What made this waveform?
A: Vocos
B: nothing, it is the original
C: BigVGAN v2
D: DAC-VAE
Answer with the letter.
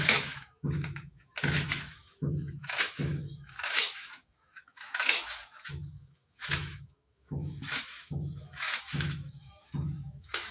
D